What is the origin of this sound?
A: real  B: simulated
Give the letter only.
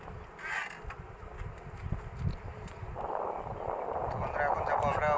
A